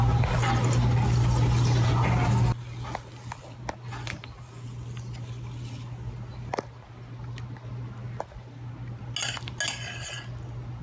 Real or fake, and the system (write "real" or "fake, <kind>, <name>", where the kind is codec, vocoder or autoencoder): real